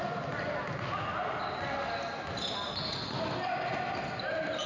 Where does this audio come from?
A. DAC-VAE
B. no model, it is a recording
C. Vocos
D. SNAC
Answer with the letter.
B